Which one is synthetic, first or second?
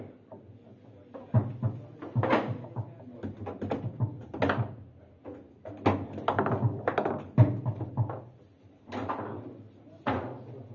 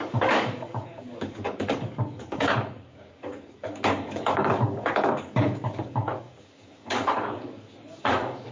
second